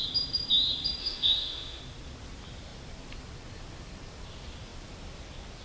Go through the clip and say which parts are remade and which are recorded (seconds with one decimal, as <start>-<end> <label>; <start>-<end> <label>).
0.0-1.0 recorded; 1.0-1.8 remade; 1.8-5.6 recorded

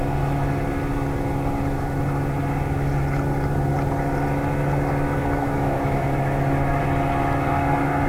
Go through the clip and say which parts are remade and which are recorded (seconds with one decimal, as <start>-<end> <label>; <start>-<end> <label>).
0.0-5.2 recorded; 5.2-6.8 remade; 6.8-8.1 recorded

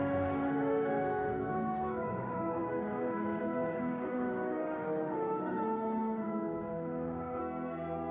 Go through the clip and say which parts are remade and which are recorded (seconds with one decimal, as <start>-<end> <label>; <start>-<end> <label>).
0.0-7.4 remade; 7.4-8.1 recorded

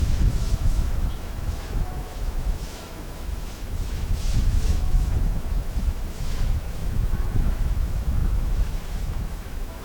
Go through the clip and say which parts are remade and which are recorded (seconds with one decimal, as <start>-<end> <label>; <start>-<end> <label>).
0.0-9.8 remade

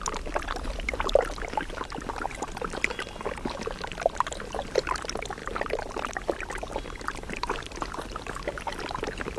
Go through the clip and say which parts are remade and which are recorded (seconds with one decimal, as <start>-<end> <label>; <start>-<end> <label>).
0.0-9.4 recorded

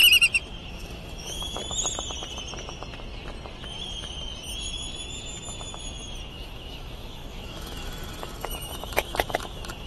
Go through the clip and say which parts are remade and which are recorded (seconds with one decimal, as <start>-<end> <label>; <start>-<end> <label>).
0.0-0.7 recorded; 0.7-1.6 remade; 1.6-6.3 recorded; 6.3-9.9 remade